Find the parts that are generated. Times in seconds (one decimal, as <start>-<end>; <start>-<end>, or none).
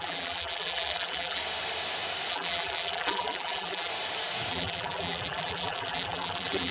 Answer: 0.0-1.4; 2.3-3.9; 4.5-6.7